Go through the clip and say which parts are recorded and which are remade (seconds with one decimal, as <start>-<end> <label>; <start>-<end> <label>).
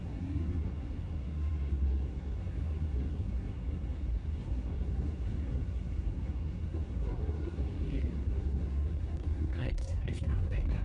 0.0-10.8 remade